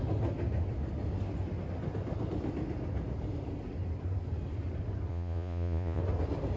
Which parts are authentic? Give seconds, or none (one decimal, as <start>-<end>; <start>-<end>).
0.0-5.1; 6.0-6.6